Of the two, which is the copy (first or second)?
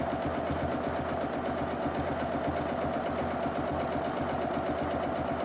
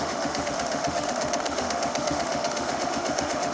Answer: second